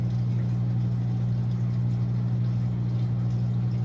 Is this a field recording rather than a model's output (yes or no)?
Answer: yes